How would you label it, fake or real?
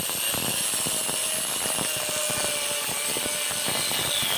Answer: real